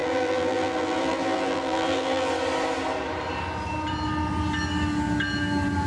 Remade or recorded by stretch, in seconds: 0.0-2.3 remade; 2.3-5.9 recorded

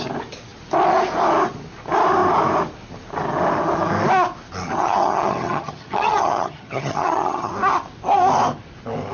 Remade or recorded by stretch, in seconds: 0.0-4.8 recorded; 4.8-7.5 remade; 7.5-9.1 recorded

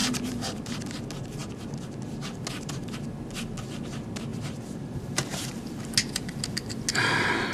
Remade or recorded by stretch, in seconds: 0.0-0.8 remade; 0.8-4.3 recorded; 4.3-5.8 remade; 5.8-7.5 recorded

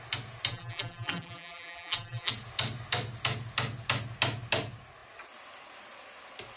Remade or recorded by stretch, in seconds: 0.0-0.5 recorded; 0.5-2.3 remade; 2.3-6.6 recorded

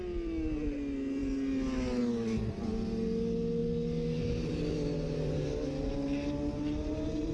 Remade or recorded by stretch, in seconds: 0.0-7.3 recorded